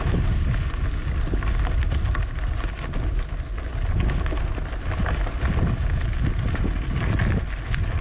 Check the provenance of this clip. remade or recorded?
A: recorded